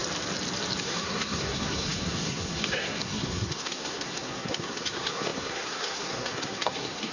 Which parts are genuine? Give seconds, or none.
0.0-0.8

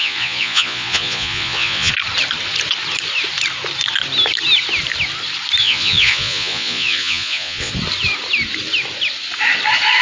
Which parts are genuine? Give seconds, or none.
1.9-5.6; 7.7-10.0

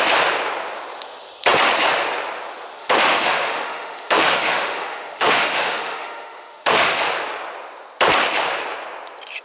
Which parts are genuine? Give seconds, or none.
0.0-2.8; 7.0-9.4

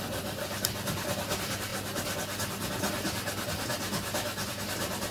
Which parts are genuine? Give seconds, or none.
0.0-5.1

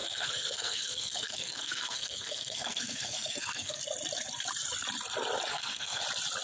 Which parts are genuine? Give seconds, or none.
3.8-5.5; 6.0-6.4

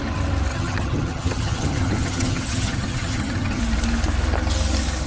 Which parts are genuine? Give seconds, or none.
0.0-0.5; 3.6-5.1